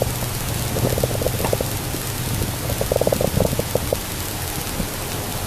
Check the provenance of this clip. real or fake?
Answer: real